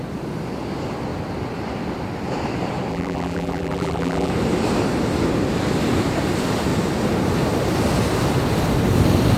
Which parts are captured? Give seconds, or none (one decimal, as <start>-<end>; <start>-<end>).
0.0-2.9; 4.3-9.4

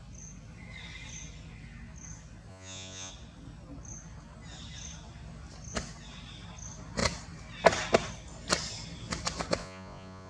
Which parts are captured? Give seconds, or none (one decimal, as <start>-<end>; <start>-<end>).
0.0-2.5; 3.1-9.6